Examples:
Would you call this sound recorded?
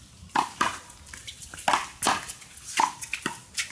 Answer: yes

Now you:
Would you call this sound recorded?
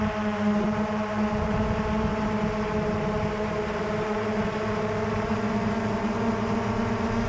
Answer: yes